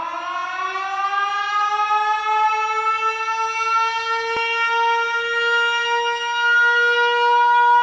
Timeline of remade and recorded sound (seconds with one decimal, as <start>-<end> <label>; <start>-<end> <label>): 0.0-7.8 recorded